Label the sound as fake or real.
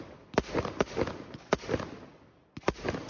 real